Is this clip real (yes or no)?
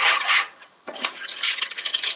no